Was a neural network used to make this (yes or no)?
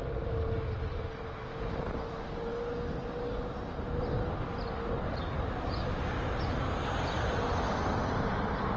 no